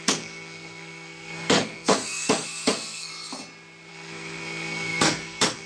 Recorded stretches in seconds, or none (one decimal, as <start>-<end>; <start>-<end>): 3.1-3.9